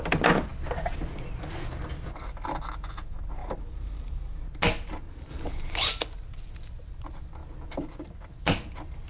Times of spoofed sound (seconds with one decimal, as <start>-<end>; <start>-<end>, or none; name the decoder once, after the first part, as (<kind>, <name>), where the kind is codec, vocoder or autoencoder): 3.4-4.4 (vocoder, BigVGAN v2); 5.3-5.9